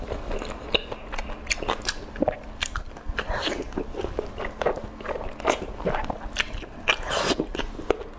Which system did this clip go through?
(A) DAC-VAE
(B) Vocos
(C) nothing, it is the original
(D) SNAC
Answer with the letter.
C